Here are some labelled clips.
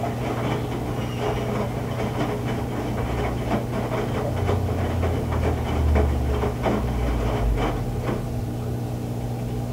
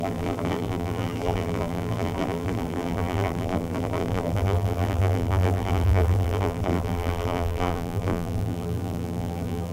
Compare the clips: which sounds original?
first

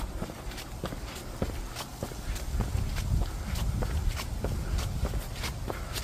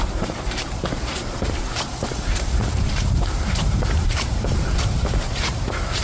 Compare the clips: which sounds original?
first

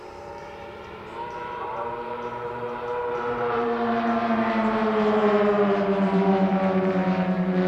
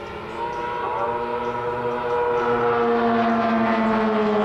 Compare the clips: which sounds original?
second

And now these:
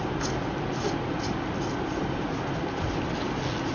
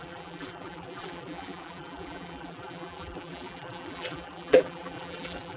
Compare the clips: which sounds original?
first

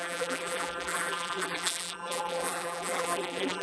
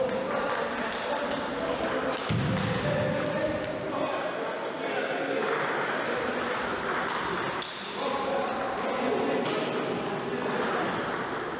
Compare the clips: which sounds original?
second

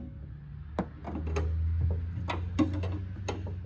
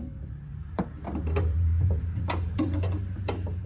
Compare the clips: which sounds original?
first